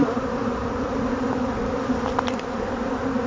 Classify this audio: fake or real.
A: fake